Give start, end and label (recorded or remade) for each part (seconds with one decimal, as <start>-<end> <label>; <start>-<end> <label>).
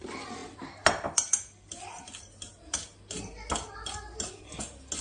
0.0-5.0 recorded